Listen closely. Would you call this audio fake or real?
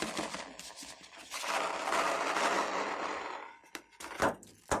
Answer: real